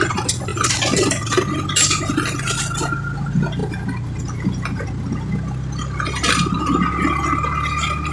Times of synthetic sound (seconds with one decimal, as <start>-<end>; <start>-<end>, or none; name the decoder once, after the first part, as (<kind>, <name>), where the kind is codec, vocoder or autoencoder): none